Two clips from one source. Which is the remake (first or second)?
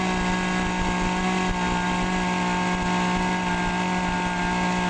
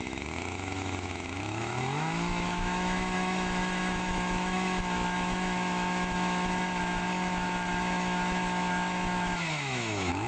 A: second